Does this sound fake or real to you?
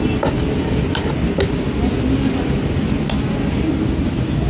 real